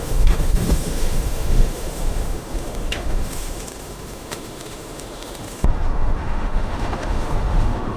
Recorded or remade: remade